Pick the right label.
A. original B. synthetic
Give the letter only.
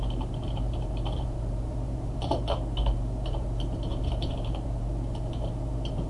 B